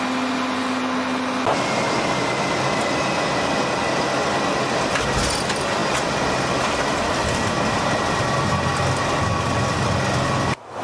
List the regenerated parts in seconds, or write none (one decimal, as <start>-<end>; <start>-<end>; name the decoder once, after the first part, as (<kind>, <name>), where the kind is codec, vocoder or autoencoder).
none